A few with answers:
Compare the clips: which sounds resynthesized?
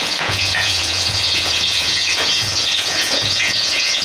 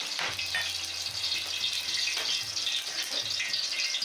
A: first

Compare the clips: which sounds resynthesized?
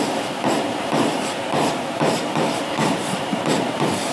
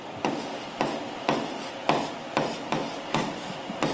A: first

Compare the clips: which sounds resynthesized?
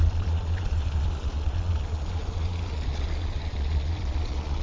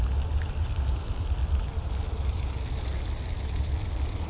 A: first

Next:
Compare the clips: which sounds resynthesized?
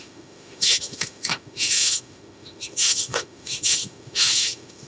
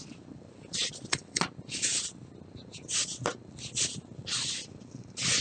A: first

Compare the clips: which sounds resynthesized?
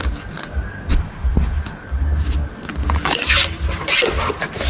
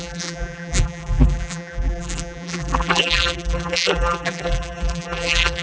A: second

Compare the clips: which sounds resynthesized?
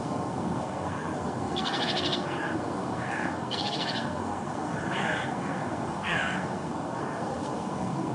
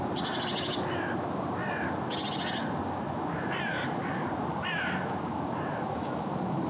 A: first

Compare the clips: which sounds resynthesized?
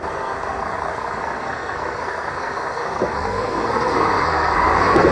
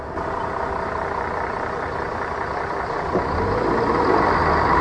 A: first